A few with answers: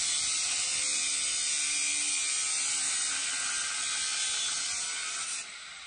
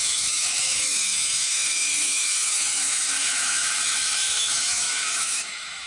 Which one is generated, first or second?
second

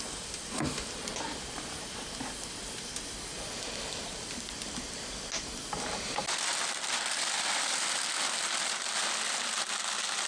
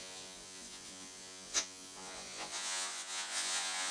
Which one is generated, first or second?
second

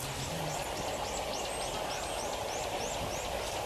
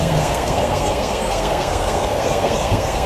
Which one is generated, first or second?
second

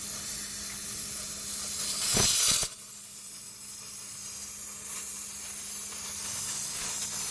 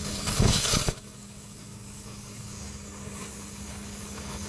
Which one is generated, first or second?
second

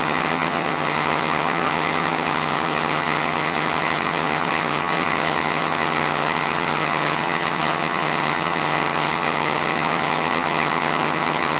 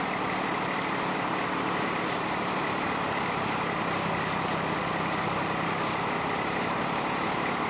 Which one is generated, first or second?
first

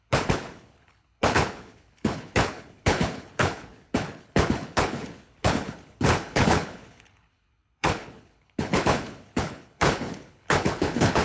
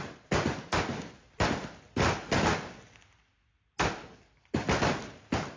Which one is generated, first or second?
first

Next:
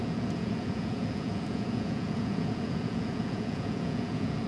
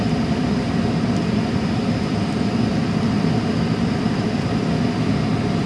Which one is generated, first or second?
first